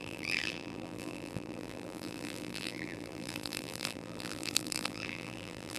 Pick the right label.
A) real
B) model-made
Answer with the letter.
B